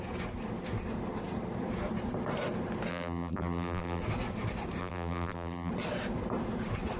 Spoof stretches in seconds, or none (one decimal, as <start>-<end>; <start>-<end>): 2.9-4.0; 4.8-5.7